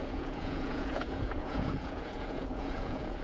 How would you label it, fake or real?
fake